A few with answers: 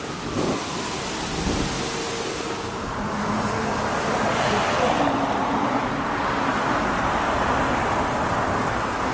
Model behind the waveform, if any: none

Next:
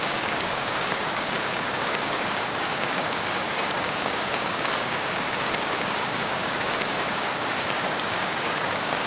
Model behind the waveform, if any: codec, DAC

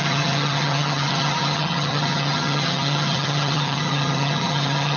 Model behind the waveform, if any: vocoder, HiFi-GAN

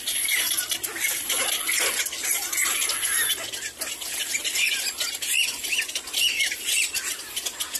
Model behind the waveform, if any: none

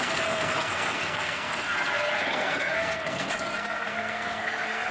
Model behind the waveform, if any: codec, SNAC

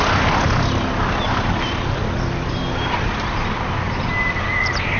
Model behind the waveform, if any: none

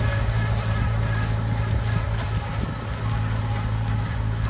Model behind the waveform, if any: none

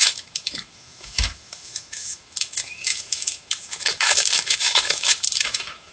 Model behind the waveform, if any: autoencoder, DAC-VAE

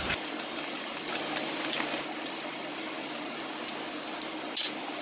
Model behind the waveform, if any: none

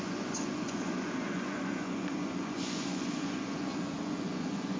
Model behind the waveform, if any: vocoder, Vocos